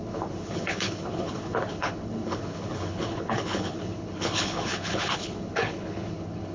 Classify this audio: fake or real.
fake